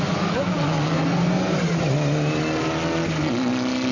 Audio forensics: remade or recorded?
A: recorded